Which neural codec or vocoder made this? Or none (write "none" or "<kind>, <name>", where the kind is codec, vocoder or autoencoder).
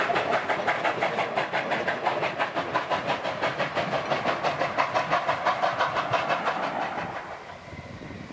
none